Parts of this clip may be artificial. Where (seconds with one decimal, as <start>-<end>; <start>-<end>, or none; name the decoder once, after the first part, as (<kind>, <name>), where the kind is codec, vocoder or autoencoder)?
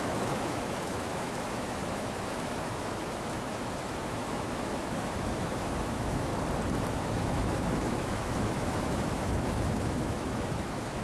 0.0-6.3 (autoencoder, DAC-VAE); 6.8-11.0